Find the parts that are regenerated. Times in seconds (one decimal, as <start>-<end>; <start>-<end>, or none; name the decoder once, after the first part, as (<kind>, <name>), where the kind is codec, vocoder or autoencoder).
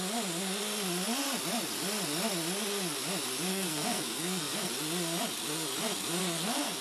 3.5-4.7 (codec, SNAC); 6.2-6.8